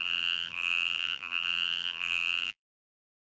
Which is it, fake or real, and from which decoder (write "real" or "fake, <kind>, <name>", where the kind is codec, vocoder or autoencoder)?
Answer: fake, vocoder, BigVGAN v2